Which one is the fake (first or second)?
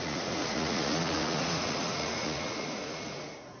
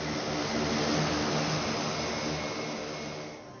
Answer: first